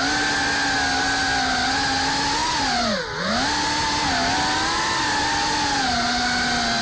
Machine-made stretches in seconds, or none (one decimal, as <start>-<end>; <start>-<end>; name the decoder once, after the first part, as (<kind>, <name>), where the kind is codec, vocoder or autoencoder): none